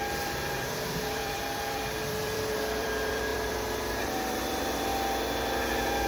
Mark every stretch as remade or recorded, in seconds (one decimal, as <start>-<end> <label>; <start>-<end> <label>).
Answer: 0.0-4.9 remade; 4.9-6.1 recorded

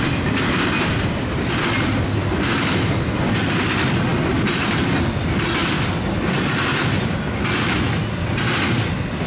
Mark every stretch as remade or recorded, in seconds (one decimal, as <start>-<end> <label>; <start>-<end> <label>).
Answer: 0.0-4.1 recorded; 4.1-4.9 remade; 4.9-5.6 recorded; 5.6-7.2 remade; 7.2-9.3 recorded

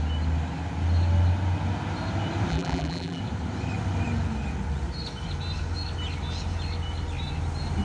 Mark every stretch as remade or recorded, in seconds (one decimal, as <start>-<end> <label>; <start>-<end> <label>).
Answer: 0.0-2.5 recorded; 2.5-3.2 remade; 3.2-7.8 recorded

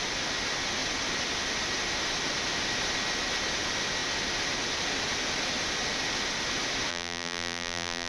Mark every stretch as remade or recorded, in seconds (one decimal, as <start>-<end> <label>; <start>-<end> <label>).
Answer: 0.0-6.9 recorded; 6.9-8.1 remade

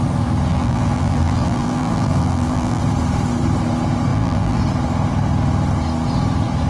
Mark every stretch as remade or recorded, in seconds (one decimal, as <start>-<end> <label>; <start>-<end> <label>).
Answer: 0.0-0.5 recorded; 0.5-2.8 remade; 2.8-4.1 recorded; 4.1-4.6 remade; 4.6-6.7 recorded

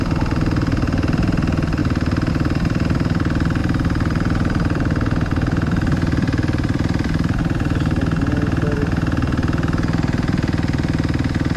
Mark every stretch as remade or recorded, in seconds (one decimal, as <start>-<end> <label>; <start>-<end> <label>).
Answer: 0.0-3.6 recorded; 3.6-7.4 remade; 7.4-11.6 recorded